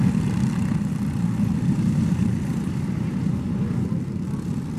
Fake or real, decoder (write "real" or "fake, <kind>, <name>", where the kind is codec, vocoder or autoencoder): real